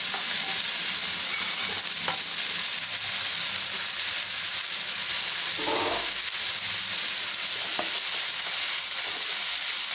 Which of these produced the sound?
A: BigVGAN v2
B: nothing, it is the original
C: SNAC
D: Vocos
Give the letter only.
B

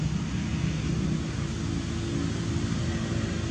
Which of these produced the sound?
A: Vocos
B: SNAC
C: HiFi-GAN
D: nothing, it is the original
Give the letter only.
D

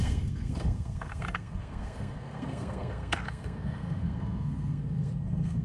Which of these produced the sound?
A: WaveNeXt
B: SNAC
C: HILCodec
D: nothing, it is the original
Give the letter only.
B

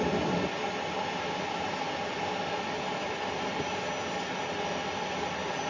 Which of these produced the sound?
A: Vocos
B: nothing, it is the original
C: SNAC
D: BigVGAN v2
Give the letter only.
B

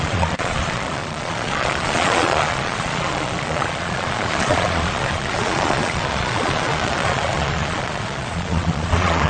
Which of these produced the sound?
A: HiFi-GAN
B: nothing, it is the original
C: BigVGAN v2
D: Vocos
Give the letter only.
D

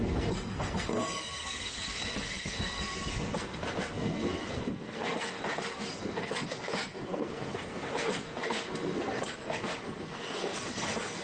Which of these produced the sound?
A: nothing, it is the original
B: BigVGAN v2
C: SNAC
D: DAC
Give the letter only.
C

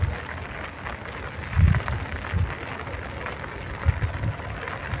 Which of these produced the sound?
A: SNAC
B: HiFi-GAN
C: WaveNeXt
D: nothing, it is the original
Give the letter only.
D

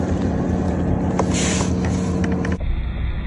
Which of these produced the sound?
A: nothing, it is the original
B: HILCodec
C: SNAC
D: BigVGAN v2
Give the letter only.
A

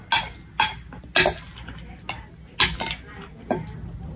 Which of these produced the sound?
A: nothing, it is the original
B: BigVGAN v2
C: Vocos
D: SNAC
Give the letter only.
A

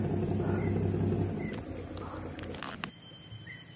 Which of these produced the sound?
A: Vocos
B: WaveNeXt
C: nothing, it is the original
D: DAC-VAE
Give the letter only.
C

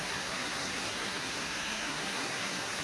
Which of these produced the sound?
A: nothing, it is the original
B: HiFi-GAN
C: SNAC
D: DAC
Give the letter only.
C